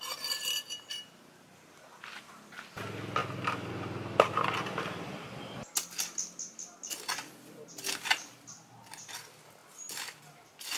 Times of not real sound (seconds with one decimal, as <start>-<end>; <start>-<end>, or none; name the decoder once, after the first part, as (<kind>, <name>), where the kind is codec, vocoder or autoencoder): none